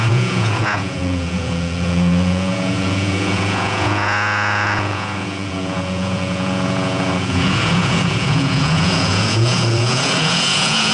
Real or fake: fake